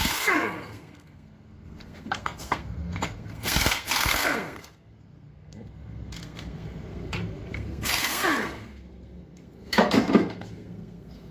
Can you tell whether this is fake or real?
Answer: fake